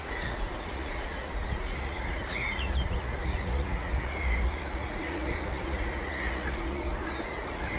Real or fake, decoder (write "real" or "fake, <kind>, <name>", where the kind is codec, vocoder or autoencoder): fake, vocoder, Vocos